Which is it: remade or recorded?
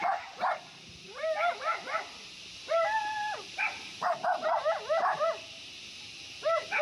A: recorded